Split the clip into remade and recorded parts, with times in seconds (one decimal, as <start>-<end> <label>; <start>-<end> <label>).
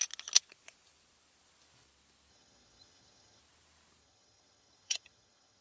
0.0-2.3 recorded; 2.3-3.4 remade; 3.4-4.0 recorded; 4.0-5.6 remade